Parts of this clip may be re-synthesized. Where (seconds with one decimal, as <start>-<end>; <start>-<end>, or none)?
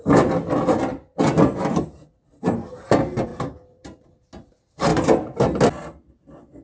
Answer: 0.9-2.7; 3.3-4.2; 4.9-5.6